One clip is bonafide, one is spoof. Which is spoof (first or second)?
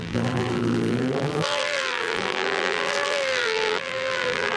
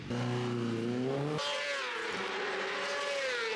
first